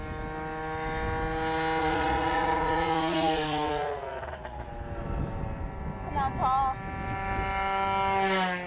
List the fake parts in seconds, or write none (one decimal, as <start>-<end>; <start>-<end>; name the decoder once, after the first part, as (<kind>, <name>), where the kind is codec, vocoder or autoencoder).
1.8-4.7 (vocoder, Vocos)